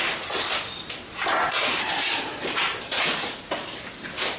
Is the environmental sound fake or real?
real